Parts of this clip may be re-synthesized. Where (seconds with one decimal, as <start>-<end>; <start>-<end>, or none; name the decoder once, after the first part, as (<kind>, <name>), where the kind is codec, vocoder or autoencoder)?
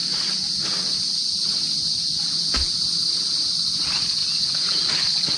none